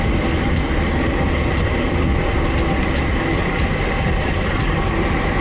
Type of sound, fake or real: real